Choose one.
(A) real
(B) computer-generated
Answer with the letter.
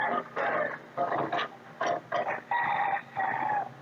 A